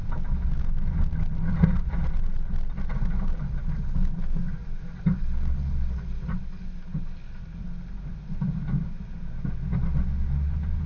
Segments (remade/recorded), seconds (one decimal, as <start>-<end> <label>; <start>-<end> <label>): 0.0-10.9 recorded